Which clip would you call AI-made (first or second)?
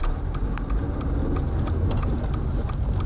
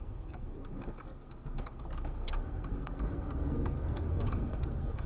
second